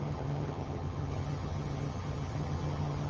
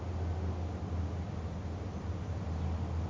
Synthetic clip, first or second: first